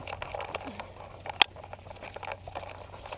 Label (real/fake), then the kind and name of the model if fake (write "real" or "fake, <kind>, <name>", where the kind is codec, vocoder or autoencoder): real